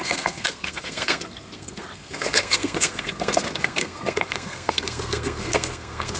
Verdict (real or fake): fake